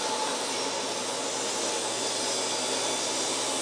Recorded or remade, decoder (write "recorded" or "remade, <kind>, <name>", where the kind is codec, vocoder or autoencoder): recorded